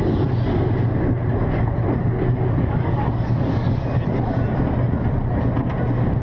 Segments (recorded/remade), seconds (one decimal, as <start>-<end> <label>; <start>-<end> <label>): 0.0-2.0 recorded; 2.0-3.8 remade; 3.8-6.2 recorded